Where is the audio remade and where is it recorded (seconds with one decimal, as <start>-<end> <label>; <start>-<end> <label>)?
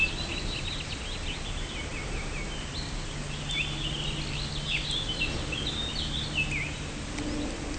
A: 0.0-7.8 recorded